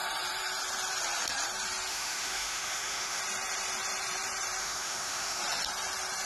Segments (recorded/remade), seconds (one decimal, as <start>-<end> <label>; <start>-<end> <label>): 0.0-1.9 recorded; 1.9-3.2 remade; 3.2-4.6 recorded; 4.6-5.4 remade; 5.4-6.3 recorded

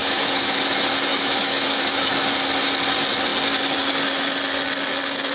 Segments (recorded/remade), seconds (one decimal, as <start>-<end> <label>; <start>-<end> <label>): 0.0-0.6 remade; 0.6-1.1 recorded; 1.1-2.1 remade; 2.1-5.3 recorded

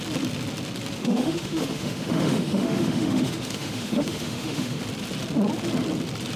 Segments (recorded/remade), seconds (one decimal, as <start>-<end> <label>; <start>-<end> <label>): 0.0-1.0 recorded; 1.0-4.8 remade; 4.8-6.4 recorded

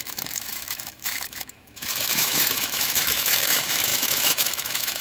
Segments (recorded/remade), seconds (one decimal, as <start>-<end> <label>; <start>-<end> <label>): 0.0-5.0 remade

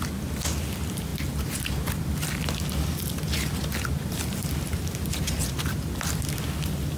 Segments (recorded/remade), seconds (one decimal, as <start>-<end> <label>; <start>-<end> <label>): 0.0-7.0 recorded